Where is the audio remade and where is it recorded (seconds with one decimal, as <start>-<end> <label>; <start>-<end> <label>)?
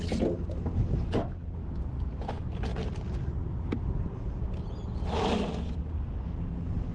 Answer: 0.0-6.9 recorded